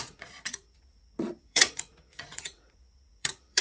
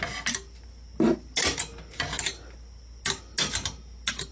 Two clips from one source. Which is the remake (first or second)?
first